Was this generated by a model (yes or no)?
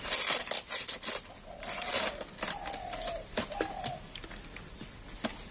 no